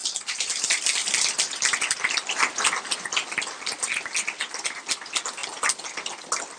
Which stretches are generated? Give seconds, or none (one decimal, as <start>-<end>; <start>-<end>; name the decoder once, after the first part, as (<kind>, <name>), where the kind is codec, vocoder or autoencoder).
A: none